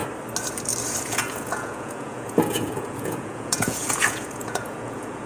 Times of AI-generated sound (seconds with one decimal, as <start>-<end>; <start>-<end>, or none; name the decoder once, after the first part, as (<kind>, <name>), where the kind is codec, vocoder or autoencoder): 1.0-5.3 (vocoder, Vocos)